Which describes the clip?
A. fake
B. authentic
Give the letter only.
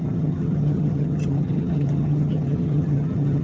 A